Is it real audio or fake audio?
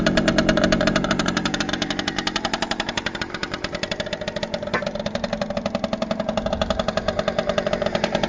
fake